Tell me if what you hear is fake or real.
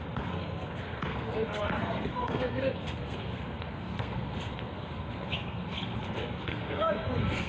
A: fake